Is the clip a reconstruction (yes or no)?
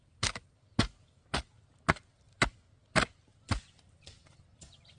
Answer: no